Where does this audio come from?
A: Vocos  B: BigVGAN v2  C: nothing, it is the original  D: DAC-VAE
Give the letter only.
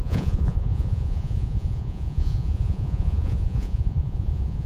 A